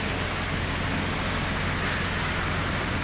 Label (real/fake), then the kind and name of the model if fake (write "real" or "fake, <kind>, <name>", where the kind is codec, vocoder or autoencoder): real